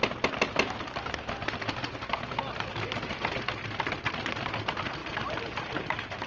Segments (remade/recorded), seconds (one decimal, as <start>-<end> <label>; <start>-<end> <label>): 0.0-5.0 recorded; 5.0-6.3 remade